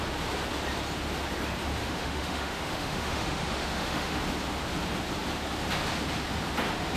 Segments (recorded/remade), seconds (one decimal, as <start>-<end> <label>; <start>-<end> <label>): 0.0-1.8 recorded; 1.8-4.2 remade; 4.2-7.0 recorded